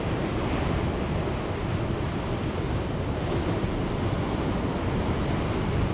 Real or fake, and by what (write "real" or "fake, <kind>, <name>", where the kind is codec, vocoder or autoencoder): real